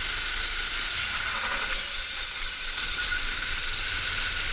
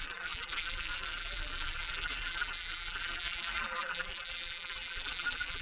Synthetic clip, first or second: second